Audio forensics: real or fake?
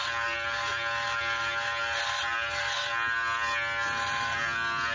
real